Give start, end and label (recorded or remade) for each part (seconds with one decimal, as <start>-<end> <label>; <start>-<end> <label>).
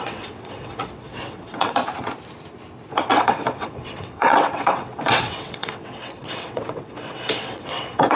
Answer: 0.0-1.8 remade; 1.8-2.9 recorded; 2.9-8.2 remade